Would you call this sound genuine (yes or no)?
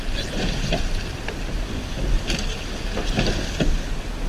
yes